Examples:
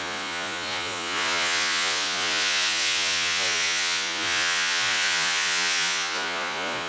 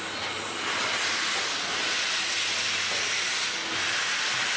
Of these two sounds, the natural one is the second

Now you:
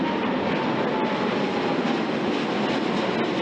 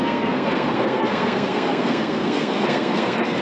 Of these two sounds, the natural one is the first